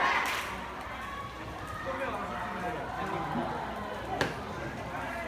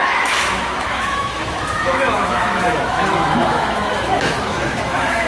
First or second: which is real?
first